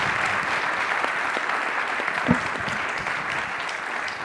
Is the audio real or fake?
real